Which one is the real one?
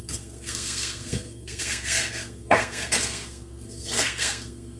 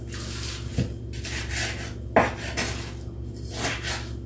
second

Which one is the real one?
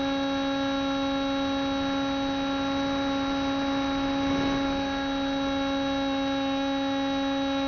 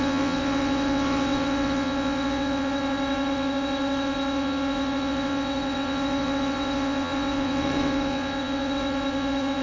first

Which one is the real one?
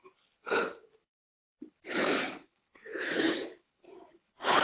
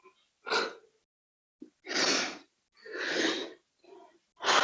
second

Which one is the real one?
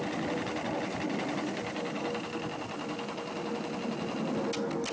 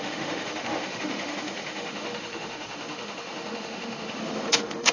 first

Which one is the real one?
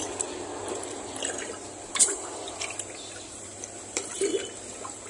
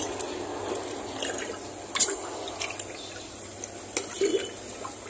second